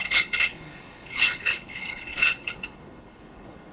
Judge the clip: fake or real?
fake